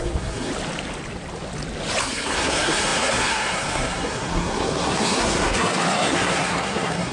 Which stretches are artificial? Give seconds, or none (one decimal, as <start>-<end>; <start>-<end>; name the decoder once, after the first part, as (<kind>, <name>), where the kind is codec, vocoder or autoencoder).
0.0-0.5 (codec, SNAC); 2.0-7.1